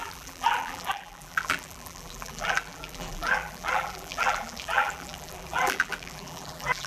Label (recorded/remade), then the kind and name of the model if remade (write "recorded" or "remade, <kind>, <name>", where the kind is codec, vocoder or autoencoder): remade, vocoder, BigVGAN v2